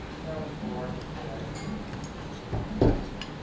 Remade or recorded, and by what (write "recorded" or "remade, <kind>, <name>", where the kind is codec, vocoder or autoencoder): recorded